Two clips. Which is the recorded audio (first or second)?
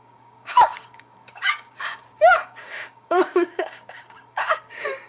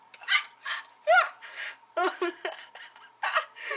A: second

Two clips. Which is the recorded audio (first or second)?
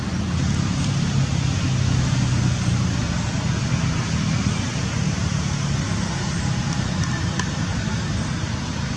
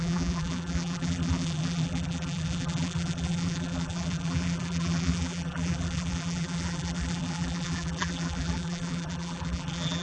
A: first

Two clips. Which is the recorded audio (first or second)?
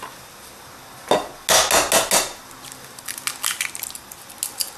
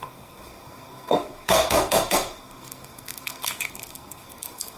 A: first